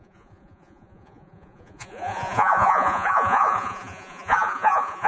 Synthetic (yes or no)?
yes